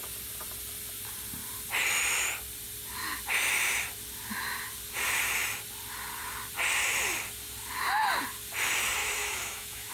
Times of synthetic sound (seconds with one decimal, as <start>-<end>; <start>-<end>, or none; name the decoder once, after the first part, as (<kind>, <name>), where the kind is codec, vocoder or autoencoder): 9.0-9.9 (autoencoder, DAC-VAE)